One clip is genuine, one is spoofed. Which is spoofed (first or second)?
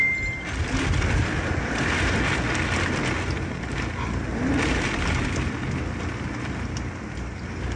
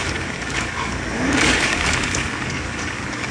second